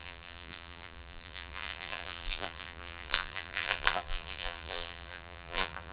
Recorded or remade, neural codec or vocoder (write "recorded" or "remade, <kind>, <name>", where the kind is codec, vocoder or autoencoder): remade, vocoder, BigVGAN v2